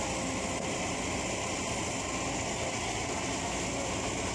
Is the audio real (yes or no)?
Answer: yes